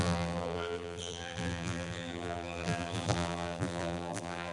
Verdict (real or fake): fake